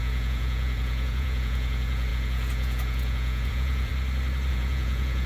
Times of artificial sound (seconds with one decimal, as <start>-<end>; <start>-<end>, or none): 0.0-3.9; 4.5-5.3